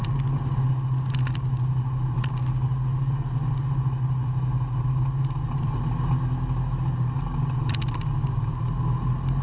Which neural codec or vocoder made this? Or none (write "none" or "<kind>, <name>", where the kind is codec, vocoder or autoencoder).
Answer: none